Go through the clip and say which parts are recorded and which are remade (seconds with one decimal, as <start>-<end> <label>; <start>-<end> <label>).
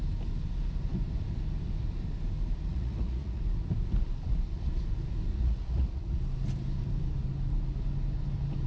0.0-2.7 recorded; 2.7-3.4 remade; 3.4-5.3 recorded; 5.3-6.0 remade; 6.0-8.7 recorded